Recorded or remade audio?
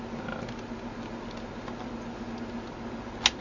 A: recorded